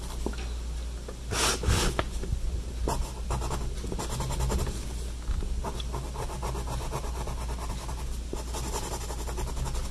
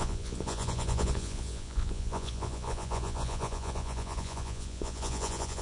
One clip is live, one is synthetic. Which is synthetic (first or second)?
second